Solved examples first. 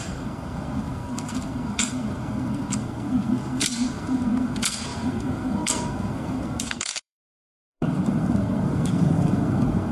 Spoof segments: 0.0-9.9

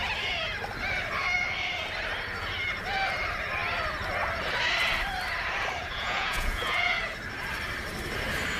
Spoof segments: 5.8-7.0

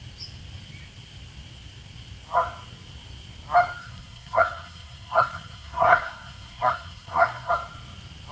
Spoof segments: 3.8-7.5

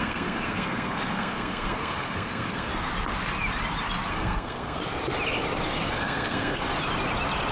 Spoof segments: 0.0-2.7; 4.1-4.8; 5.9-6.7

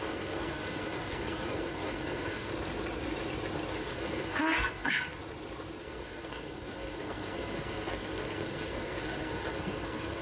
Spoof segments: 0.0-2.5; 3.7-5.2; 5.8-10.2

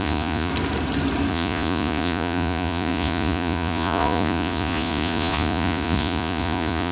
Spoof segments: 0.0-0.5; 1.3-6.9

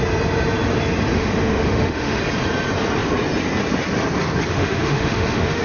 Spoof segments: 1.1-2.2; 4.5-5.6

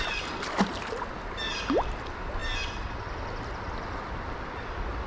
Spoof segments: none